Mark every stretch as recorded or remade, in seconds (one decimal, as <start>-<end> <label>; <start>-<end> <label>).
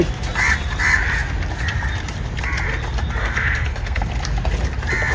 0.0-3.2 recorded; 3.2-4.1 remade; 4.1-5.1 recorded